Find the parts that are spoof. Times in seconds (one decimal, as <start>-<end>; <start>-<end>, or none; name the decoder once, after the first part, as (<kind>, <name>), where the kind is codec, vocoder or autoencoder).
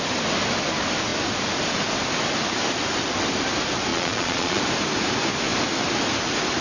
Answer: 3.9-4.6 (vocoder, Vocos)